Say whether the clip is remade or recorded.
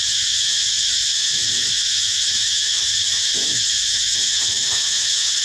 remade